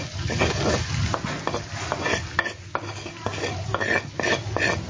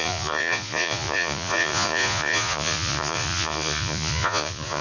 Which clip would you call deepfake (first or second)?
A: second